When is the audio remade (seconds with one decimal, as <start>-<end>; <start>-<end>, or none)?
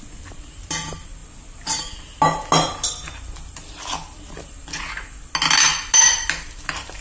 none